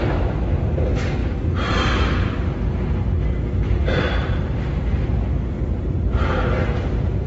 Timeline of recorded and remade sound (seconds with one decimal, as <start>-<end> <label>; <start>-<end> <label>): 0.0-7.3 recorded